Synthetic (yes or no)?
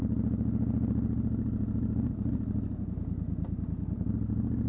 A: no